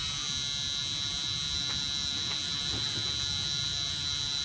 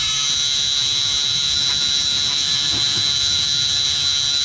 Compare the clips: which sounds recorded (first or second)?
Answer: first